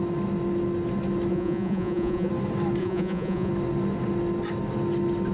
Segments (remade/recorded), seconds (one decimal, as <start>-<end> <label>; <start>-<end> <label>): 0.0-1.3 recorded; 1.3-2.3 remade; 2.3-2.8 recorded; 2.8-3.5 remade; 3.5-5.3 recorded

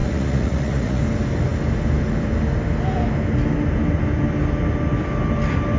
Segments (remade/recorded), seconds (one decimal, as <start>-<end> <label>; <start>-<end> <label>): 0.0-1.0 remade; 1.0-5.8 recorded